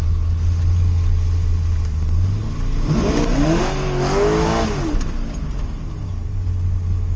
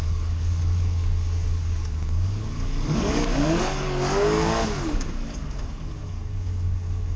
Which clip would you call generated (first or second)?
second